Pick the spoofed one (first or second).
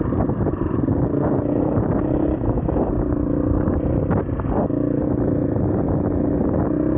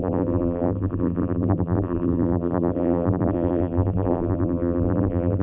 second